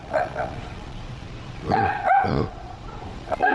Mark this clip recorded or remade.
remade